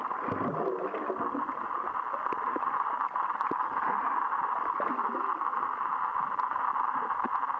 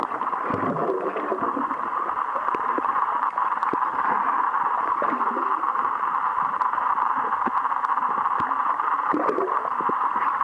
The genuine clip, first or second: first